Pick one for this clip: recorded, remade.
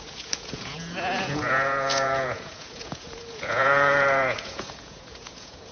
remade